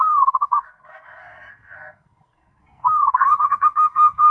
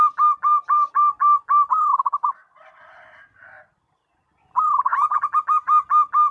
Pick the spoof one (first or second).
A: first